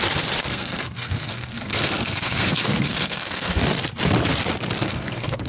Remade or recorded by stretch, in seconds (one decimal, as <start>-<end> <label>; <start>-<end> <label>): 0.0-0.4 recorded; 0.4-3.6 remade; 3.6-4.8 recorded; 4.8-5.5 remade